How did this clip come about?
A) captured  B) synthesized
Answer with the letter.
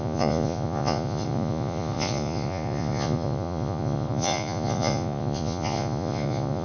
B